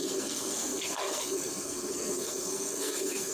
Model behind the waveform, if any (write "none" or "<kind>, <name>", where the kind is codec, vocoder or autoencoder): codec, SNAC